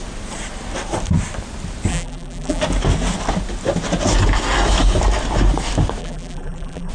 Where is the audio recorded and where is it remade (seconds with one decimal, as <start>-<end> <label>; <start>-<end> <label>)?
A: 0.0-1.9 recorded; 1.9-2.6 remade; 2.6-6.0 recorded; 6.0-6.9 remade